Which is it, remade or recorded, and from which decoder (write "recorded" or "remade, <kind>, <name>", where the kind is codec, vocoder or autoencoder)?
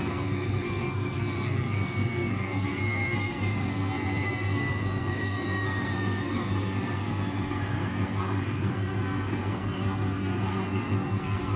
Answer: remade, codec, SNAC